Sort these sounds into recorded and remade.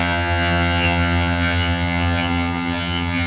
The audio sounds remade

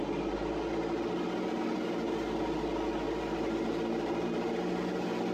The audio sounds recorded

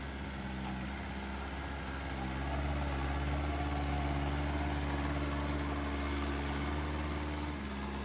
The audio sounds recorded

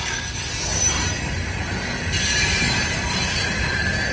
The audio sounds recorded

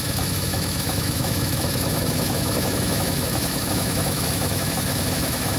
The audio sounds remade